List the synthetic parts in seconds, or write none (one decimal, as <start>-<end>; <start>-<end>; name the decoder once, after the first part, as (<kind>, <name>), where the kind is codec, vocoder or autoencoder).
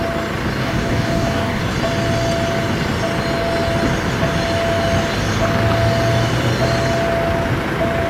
0.6-1.6 (codec, DAC)